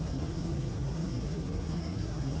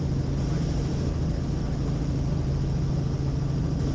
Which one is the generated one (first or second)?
first